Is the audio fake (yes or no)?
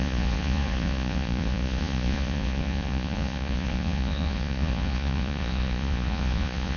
yes